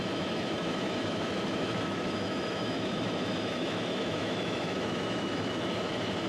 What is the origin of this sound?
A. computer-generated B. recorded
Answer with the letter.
A